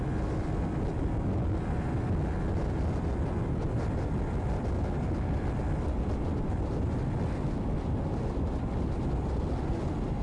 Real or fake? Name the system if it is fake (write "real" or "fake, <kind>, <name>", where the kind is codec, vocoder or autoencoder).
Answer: real